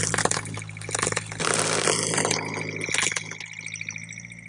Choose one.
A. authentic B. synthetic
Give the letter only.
A